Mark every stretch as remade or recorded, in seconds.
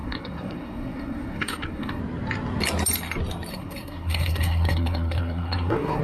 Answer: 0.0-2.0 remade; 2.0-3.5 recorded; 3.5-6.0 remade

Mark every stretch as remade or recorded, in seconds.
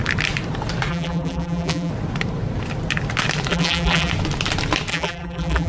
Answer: 0.0-0.9 recorded; 0.9-1.9 remade; 1.9-3.5 recorded; 3.5-4.1 remade; 4.1-4.9 recorded; 4.9-5.7 remade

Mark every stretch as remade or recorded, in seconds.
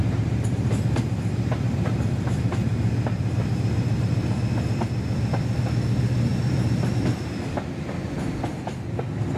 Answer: 0.0-4.1 remade; 4.1-6.3 recorded; 6.3-6.9 remade; 6.9-9.4 recorded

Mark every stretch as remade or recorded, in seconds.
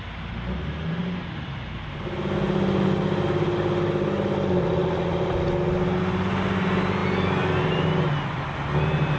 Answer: 0.0-9.2 recorded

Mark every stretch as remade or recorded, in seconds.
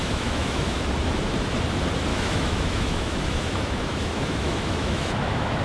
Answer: 0.0-0.8 remade; 0.8-2.1 recorded; 2.1-5.6 remade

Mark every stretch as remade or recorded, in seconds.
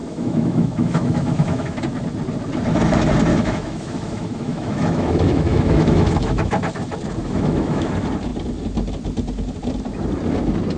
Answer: 0.0-1.8 remade; 1.8-3.3 recorded; 3.3-6.5 remade; 6.5-7.2 recorded; 7.2-7.9 remade; 7.9-10.8 recorded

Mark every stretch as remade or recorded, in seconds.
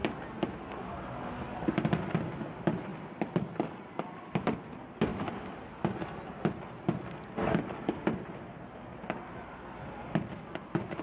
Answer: 0.0-11.0 recorded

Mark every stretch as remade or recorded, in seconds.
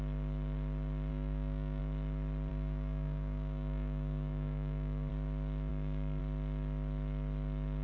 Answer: 0.0-1.1 recorded; 1.1-1.8 remade; 1.8-2.5 recorded; 2.5-5.1 remade; 5.1-5.7 recorded; 5.7-6.2 remade; 6.2-7.8 recorded